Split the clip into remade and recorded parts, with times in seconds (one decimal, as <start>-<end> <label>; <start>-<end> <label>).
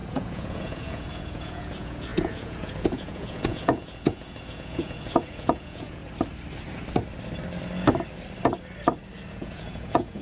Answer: 0.0-6.0 remade; 6.0-9.3 recorded; 9.3-10.2 remade